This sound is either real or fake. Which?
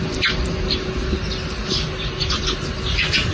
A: real